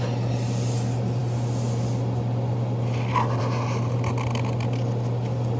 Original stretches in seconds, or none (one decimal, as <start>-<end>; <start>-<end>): 0.0-5.6